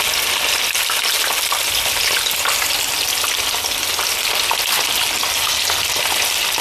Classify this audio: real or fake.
real